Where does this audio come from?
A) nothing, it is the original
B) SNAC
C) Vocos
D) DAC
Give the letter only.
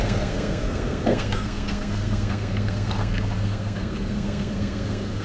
B